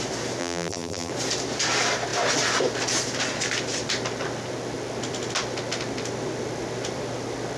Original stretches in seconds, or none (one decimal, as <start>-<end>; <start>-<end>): 0.0-0.4; 1.1-7.6